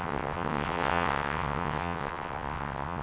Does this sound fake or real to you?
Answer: fake